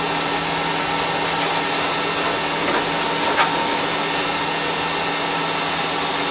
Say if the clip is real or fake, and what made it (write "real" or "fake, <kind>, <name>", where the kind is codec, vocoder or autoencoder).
real